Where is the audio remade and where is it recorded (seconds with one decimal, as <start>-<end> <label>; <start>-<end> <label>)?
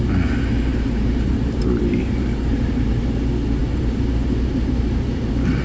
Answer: 0.0-0.7 recorded; 0.7-3.1 remade; 3.1-3.6 recorded; 3.6-5.6 remade